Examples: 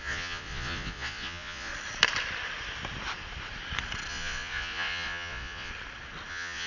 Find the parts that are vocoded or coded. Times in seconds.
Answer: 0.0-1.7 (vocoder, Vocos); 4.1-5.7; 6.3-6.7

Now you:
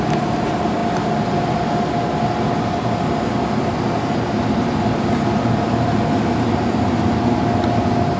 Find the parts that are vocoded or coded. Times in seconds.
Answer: none

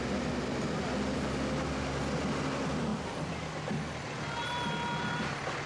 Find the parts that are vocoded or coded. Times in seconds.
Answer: none

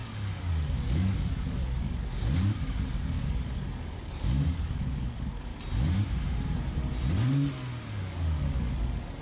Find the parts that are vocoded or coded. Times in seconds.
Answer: 0.0-5.5 (codec, DAC); 8.0-9.2

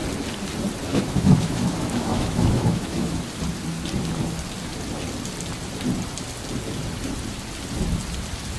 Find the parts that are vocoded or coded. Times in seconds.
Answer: 0.9-3.2 (autoencoder, DAC-VAE)

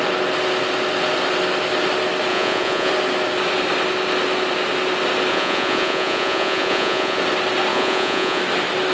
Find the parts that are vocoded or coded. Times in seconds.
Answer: 2.3-2.9 (vocoder, Vocos); 5.3-7.2; 7.7-8.4